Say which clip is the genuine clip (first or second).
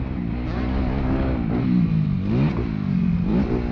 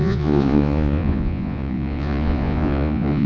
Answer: first